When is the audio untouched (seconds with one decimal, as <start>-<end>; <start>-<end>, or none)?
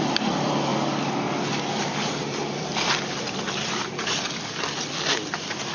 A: 0.7-1.8; 2.7-4.9